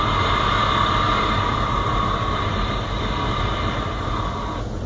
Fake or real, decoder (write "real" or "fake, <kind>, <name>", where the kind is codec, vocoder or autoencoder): real